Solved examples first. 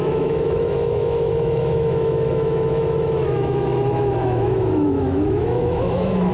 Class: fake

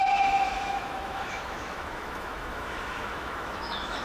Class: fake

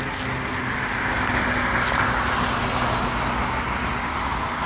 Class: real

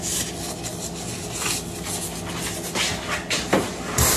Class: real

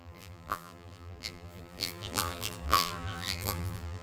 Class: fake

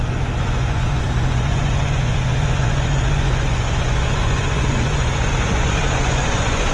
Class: fake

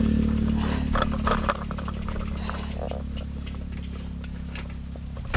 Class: real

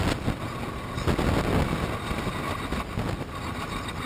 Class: real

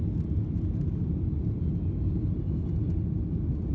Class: real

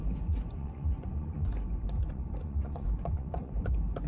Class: fake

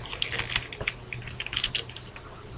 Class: real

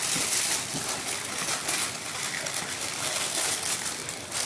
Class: real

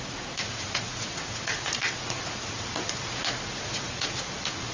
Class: fake